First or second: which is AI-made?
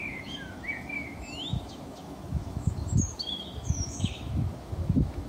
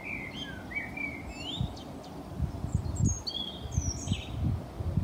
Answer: first